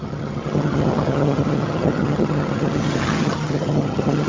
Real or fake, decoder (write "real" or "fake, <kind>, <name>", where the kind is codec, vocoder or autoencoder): fake, vocoder, HiFi-GAN